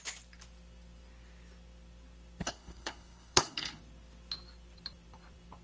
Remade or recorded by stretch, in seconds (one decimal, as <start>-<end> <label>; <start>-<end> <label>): 0.0-2.4 recorded; 2.4-3.8 remade; 3.8-5.6 recorded